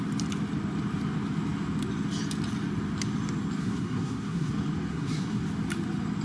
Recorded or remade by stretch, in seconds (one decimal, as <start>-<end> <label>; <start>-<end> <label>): 0.0-3.6 recorded; 3.6-4.5 remade; 4.5-4.9 recorded; 4.9-5.4 remade; 5.4-6.2 recorded